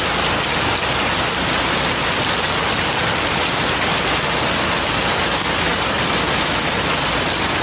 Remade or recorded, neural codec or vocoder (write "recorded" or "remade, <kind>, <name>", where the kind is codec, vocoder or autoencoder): recorded